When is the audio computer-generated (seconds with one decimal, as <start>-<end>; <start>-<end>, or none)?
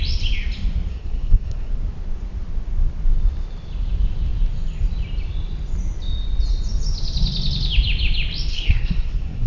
0.9-1.7; 8.5-9.5